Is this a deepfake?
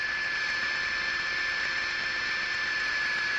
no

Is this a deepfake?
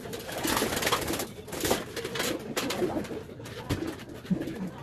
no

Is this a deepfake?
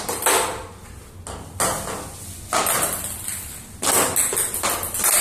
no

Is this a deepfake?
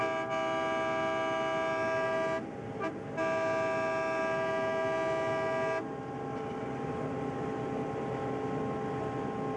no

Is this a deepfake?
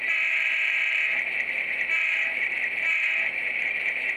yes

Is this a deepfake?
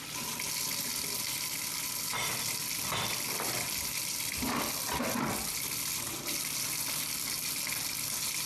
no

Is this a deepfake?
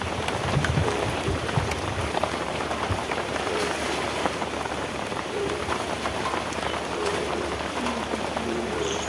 yes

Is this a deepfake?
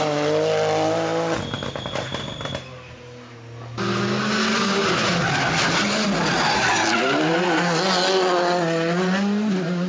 no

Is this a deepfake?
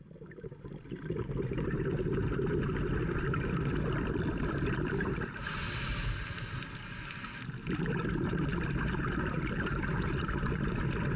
no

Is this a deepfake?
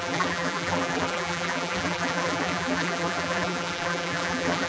yes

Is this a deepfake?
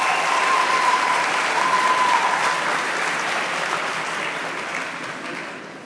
no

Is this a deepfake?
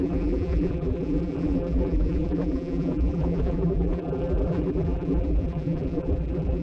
yes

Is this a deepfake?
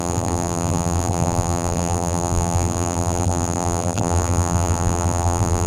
yes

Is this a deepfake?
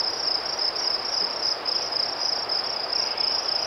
no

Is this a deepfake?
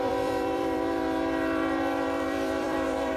yes